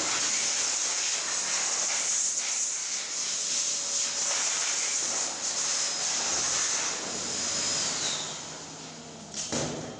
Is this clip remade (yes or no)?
no